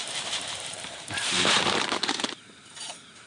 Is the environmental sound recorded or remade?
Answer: remade